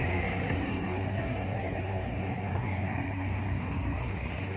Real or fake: fake